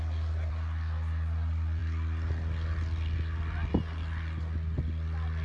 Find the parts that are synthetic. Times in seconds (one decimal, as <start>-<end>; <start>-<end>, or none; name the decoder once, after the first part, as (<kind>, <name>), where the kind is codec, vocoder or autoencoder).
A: none